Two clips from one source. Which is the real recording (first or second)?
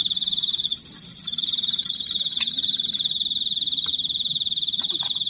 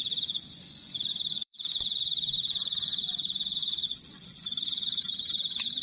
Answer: first